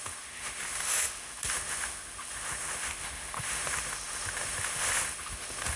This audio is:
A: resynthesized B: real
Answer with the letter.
A